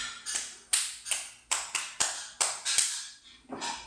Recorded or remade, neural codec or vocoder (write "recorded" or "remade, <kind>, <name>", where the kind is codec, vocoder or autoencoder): recorded